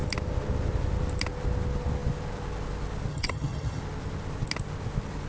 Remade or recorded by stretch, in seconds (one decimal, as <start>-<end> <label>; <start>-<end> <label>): 0.0-3.1 recorded; 3.1-3.8 remade; 3.8-5.3 recorded